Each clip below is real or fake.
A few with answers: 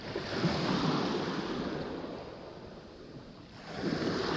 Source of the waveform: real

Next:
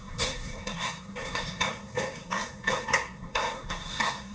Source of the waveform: fake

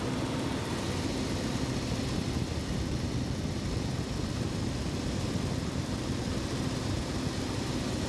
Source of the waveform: real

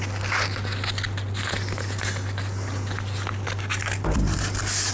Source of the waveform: real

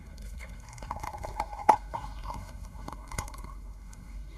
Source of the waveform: fake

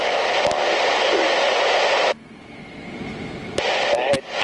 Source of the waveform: real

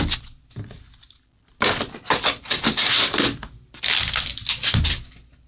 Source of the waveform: real